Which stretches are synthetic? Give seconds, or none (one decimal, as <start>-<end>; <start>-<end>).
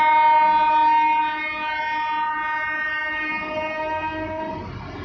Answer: 2.9-4.4